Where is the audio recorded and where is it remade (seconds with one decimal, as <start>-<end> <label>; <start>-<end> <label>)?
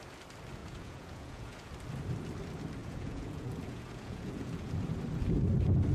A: 0.0-0.6 recorded; 0.6-1.7 remade; 1.7-2.8 recorded; 2.8-4.7 remade; 4.7-5.9 recorded